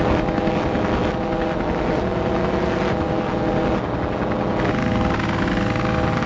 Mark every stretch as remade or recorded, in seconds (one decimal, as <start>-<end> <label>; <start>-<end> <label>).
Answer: 0.0-6.3 recorded